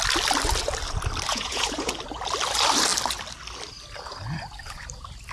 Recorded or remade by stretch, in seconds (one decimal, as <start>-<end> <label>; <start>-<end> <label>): 0.0-1.3 recorded; 1.3-1.9 remade; 1.9-5.3 recorded